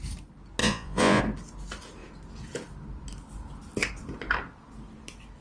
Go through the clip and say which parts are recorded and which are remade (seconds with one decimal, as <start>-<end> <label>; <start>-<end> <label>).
0.0-0.6 recorded; 0.6-1.2 remade; 1.2-5.4 recorded